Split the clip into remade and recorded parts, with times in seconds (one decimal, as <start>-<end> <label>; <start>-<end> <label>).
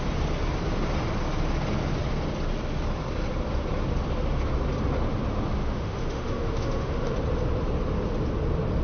0.0-5.6 recorded; 5.6-7.1 remade; 7.1-8.8 recorded